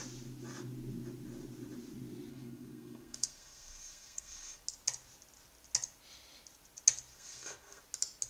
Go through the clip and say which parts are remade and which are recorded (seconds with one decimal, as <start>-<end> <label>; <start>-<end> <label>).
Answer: 0.0-2.3 recorded; 2.3-4.6 remade; 4.6-7.1 recorded; 7.1-7.8 remade; 7.8-8.3 recorded